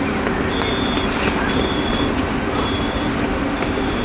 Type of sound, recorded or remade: remade